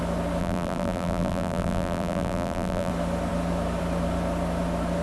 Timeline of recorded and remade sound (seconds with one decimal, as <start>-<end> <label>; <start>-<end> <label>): 0.0-0.4 recorded; 0.4-2.9 remade; 2.9-5.0 recorded